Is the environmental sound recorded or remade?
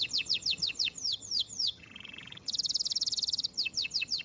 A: remade